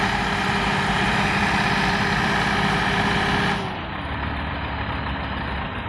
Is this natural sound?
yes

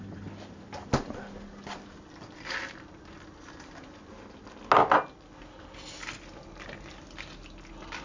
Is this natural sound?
yes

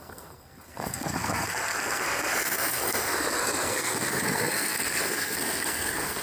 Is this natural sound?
no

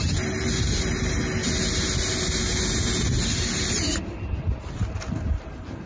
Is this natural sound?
yes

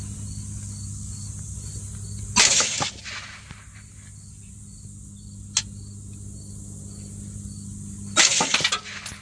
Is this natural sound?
yes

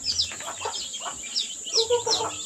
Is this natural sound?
yes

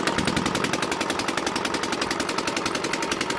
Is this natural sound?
yes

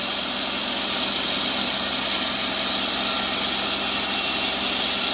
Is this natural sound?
yes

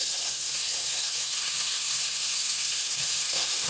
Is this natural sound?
no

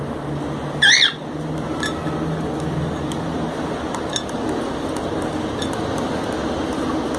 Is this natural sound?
yes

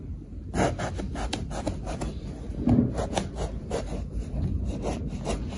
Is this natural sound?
yes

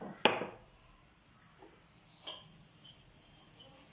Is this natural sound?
yes